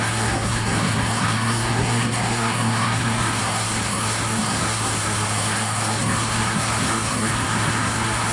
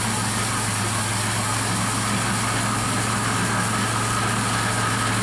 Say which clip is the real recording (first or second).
second